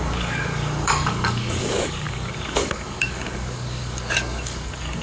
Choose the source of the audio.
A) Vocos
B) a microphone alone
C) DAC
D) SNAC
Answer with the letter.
C